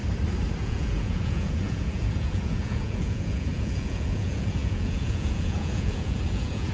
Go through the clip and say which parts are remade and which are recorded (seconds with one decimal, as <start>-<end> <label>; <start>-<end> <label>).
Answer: 0.0-0.6 recorded; 0.6-6.7 remade